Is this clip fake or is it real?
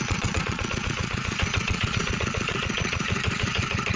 fake